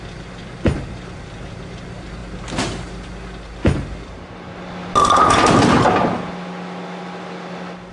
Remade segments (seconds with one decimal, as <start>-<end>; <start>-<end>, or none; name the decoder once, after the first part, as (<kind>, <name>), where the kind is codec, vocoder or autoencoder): none